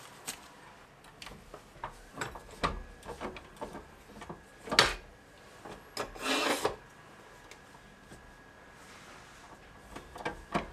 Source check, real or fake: real